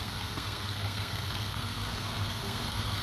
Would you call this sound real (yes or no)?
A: no